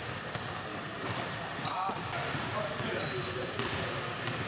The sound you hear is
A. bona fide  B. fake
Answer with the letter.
A